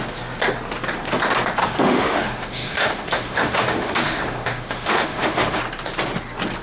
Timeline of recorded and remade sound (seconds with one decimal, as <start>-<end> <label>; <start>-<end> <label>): 0.0-1.6 recorded; 1.6-5.6 remade; 5.6-6.6 recorded